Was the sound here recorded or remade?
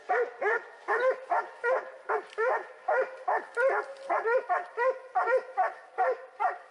recorded